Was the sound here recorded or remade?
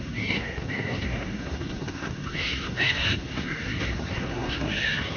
remade